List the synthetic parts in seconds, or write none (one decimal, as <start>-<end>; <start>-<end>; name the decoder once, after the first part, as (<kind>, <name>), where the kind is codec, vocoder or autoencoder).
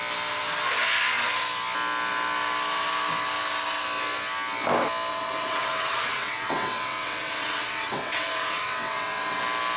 5.1-9.4 (vocoder, WaveNeXt)